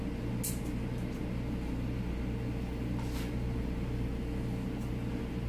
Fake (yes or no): no